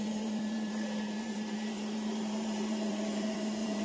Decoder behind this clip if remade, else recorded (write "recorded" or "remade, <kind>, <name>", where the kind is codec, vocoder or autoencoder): remade, vocoder, BigVGAN v2